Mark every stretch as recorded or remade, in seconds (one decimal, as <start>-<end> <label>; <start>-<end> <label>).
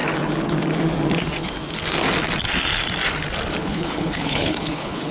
0.0-3.6 recorded; 3.6-5.1 remade